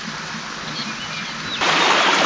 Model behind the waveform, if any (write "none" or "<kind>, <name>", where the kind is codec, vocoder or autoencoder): none